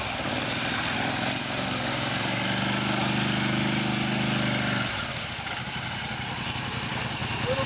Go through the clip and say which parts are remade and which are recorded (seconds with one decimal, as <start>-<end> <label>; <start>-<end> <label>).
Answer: 0.0-7.7 recorded